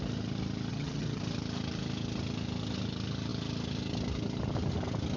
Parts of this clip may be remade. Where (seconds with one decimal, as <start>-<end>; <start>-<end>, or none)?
0.7-1.2